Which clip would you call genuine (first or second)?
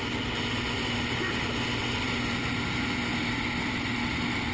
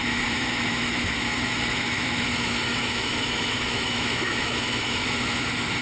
first